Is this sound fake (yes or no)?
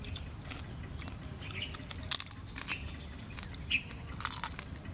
no